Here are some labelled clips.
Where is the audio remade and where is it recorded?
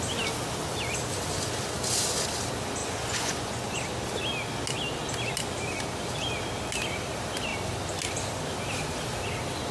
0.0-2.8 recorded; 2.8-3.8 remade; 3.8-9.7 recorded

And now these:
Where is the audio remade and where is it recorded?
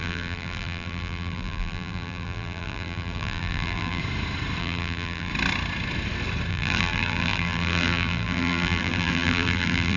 0.0-4.0 remade; 4.0-4.6 recorded; 4.6-5.3 remade; 5.3-6.5 recorded; 6.5-10.0 remade